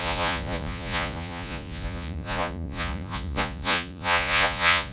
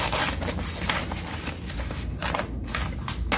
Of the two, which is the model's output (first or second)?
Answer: first